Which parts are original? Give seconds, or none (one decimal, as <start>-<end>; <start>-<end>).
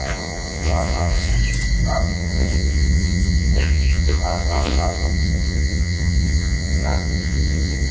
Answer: 1.3-2.0